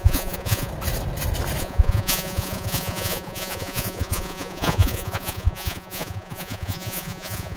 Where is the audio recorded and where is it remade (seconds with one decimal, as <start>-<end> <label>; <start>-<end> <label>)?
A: 0.0-0.7 remade; 0.7-1.6 recorded; 1.6-7.6 remade